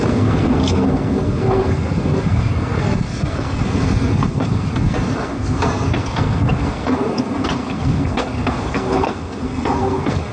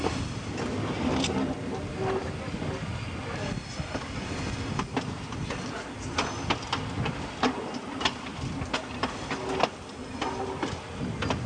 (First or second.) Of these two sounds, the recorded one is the second